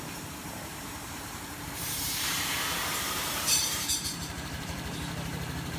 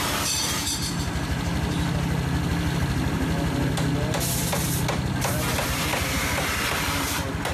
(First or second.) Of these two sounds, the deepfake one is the first